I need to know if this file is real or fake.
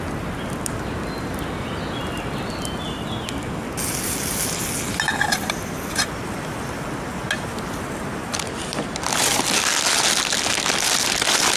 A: real